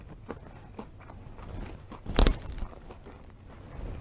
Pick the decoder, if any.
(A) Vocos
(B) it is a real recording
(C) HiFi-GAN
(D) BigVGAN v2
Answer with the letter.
B